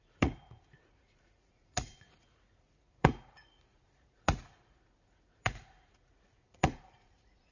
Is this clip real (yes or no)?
no